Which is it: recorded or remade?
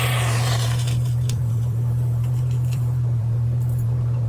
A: remade